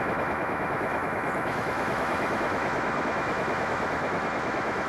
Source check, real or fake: fake